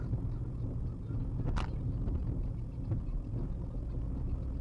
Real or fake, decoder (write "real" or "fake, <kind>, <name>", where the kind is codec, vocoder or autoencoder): real